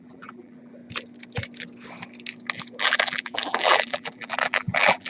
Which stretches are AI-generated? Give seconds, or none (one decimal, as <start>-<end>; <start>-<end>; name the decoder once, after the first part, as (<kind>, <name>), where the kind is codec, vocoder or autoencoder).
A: 0.0-0.8 (vocoder, BigVGAN v2); 2.8-5.1